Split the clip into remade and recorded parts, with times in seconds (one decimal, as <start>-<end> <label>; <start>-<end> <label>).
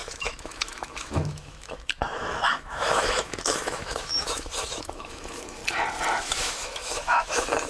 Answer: 0.0-5.6 remade; 5.6-6.2 recorded; 6.2-7.7 remade